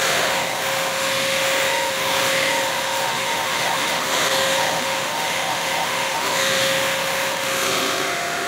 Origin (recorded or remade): remade